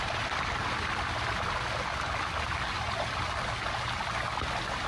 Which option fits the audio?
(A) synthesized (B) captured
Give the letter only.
B